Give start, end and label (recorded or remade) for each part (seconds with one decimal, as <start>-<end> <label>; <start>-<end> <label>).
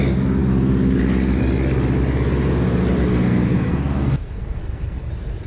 0.0-3.1 recorded; 3.1-5.1 remade; 5.1-5.5 recorded